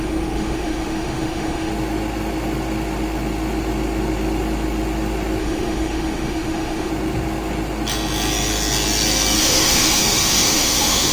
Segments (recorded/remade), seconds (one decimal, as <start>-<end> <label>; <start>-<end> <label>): 0.0-1.7 remade; 1.7-5.4 recorded; 5.4-6.9 remade; 6.9-9.4 recorded; 9.4-11.1 remade